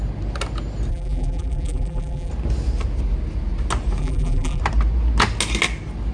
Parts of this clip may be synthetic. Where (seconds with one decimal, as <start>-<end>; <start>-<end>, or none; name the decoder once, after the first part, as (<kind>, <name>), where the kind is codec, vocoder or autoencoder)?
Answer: 0.9-2.3 (vocoder, BigVGAN v2); 4.0-4.6